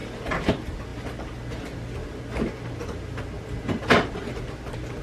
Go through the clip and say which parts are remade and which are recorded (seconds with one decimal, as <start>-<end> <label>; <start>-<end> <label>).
0.0-0.5 remade; 0.5-5.0 recorded